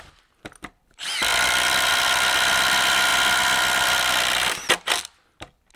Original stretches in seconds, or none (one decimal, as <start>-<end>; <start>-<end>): 0.0-5.8